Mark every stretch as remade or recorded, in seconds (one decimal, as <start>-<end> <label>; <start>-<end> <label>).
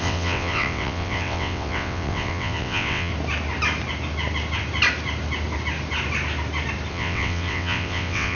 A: 0.0-3.1 remade; 3.1-6.9 recorded; 6.9-8.4 remade